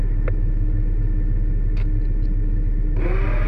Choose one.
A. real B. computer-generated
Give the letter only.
A